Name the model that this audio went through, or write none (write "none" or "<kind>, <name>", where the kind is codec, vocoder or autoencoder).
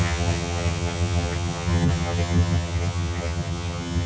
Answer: vocoder, HiFi-GAN